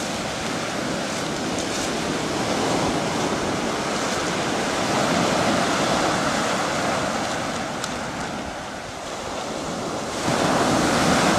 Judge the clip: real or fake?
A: real